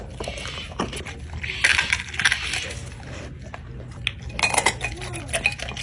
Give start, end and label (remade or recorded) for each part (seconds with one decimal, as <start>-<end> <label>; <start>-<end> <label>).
0.0-5.8 recorded